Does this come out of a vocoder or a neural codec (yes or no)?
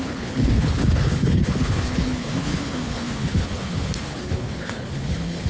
yes